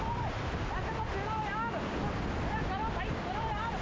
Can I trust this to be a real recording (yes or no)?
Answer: yes